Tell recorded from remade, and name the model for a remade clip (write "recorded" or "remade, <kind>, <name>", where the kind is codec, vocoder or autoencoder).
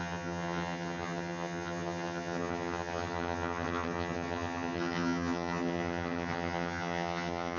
remade, vocoder, HiFi-GAN